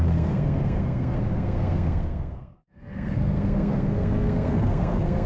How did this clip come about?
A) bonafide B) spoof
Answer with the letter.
B